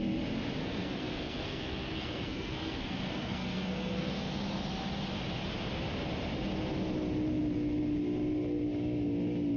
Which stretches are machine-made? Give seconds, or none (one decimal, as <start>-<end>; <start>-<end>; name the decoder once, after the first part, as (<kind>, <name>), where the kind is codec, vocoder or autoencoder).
0.6-4.4 (codec, SNAC)